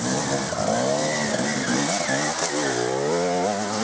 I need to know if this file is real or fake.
real